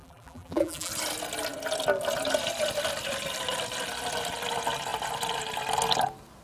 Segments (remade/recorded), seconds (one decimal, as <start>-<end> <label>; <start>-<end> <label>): 0.0-0.9 remade; 0.9-6.4 recorded